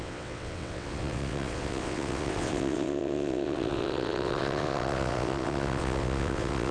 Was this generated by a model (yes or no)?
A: yes